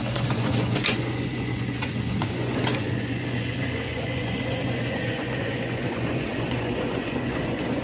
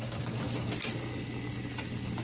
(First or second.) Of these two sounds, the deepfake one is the first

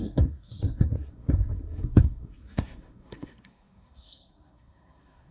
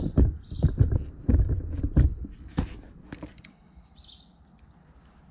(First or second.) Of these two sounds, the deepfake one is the first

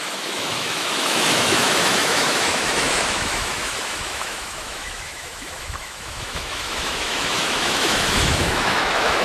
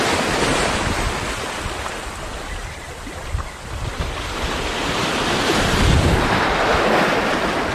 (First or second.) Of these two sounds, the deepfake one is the first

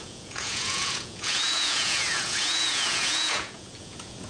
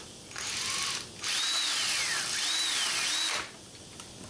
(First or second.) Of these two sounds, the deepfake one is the first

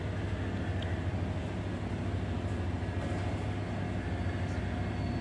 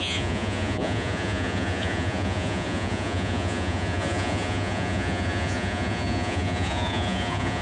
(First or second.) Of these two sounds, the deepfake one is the second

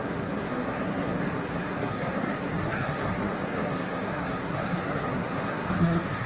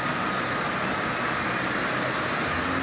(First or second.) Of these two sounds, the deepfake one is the first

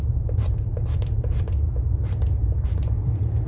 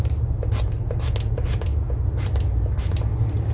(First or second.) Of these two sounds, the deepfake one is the first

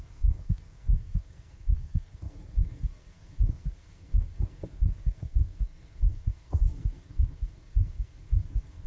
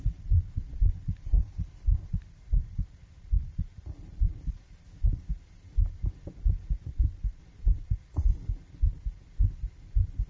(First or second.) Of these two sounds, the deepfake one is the first